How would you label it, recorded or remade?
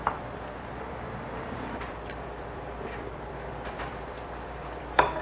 remade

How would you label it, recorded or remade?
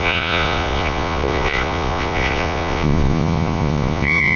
remade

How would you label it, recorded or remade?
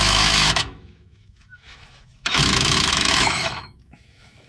remade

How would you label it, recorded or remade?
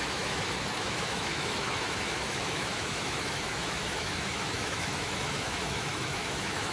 remade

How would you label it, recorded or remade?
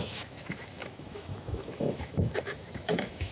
remade